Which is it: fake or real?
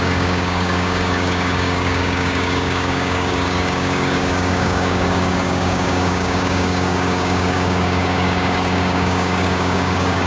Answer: fake